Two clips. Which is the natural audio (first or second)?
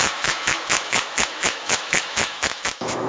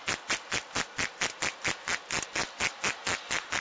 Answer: second